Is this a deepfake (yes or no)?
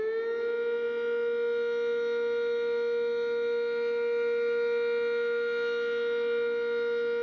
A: no